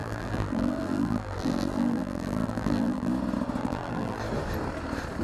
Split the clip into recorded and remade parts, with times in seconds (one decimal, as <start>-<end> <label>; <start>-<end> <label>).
0.0-3.1 remade; 3.1-3.6 recorded; 3.6-4.2 remade; 4.2-5.2 recorded